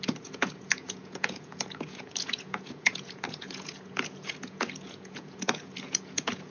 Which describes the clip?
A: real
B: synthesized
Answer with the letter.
B